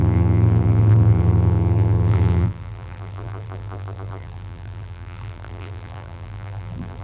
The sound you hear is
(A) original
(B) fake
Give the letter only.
B